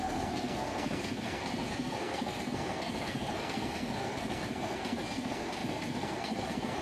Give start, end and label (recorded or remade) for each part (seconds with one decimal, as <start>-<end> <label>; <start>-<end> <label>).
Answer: 0.0-6.8 remade